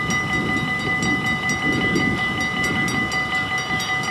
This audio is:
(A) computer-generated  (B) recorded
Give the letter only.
B